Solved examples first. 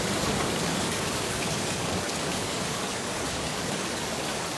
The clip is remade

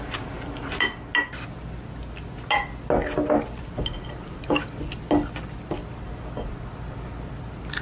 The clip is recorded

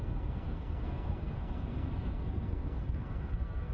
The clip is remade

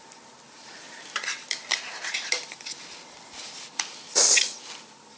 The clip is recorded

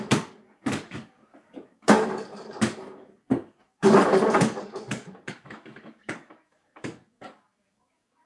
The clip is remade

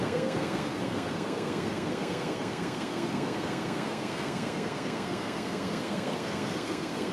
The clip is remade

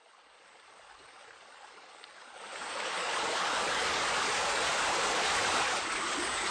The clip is remade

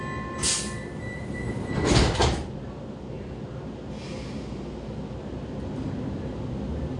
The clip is recorded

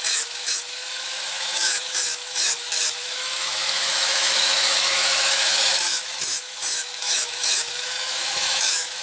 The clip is remade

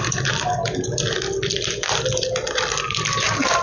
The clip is recorded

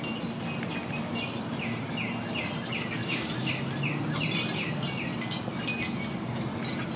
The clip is recorded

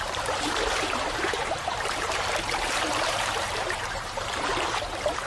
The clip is remade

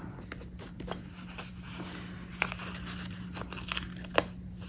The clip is recorded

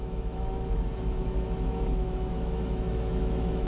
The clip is remade